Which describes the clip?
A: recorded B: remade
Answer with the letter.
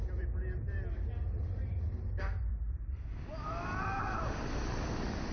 B